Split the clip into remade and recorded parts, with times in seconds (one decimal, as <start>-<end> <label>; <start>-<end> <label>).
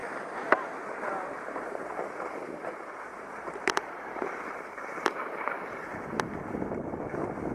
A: 0.0-3.1 recorded; 3.1-4.9 remade; 4.9-7.5 recorded